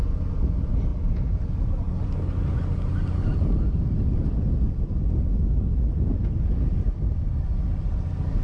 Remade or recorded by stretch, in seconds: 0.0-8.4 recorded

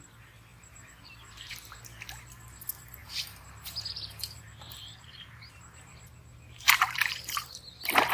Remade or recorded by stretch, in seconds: 0.0-0.5 recorded; 0.5-1.5 remade; 1.5-3.0 recorded; 3.0-7.6 remade; 7.6-8.1 recorded

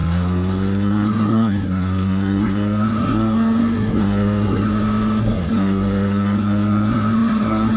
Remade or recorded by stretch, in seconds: 0.0-4.7 remade; 4.7-5.2 recorded; 5.2-7.8 remade

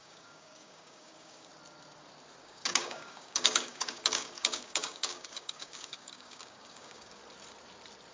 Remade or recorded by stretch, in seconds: 0.0-1.5 remade; 1.5-2.4 recorded; 2.4-7.2 remade; 7.2-8.1 recorded

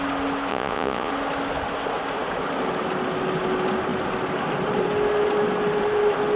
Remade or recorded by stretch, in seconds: 0.0-0.5 recorded; 0.5-1.1 remade; 1.1-6.4 recorded

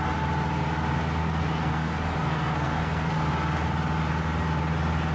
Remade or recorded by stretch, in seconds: 0.0-1.2 recorded; 1.2-3.3 remade; 3.3-5.1 recorded

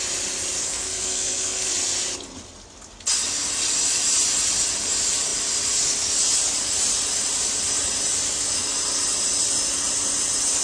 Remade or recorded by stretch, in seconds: 0.0-0.6 recorded; 0.6-1.7 remade; 1.7-10.6 recorded

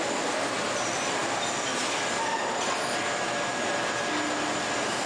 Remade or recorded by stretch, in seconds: 0.0-5.1 recorded